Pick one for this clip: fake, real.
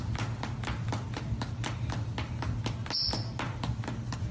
real